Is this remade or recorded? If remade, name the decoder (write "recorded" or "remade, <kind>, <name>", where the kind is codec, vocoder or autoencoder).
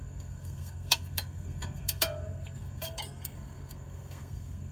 remade, codec, SNAC